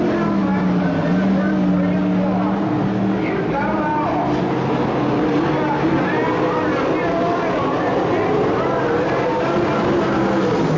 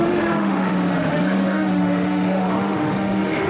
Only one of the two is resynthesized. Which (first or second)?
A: second